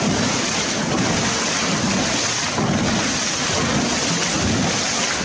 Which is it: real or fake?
real